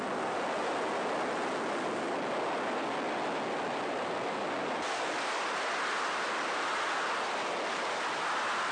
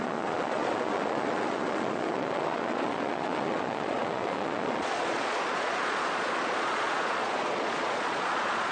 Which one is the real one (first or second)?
first